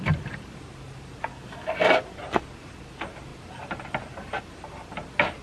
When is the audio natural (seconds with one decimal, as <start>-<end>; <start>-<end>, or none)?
0.0-1.3; 2.0-5.4